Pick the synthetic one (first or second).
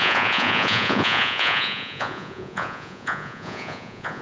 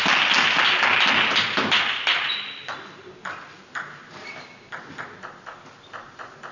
first